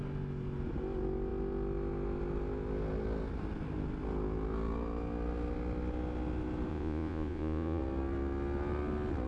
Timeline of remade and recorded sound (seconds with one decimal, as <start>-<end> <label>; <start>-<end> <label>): 0.0-6.7 recorded; 6.7-7.8 remade; 7.8-9.3 recorded

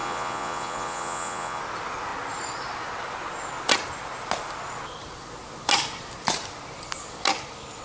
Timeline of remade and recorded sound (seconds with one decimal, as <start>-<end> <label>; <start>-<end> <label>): 0.0-1.6 remade; 1.6-7.8 recorded

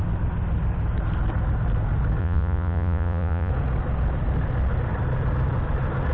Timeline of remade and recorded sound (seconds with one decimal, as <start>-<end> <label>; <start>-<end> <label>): 0.0-2.2 recorded; 2.2-3.5 remade; 3.5-6.1 recorded

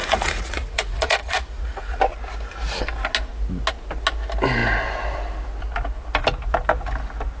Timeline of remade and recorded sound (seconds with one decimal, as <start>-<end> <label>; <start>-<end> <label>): 0.0-2.0 remade; 2.0-7.4 recorded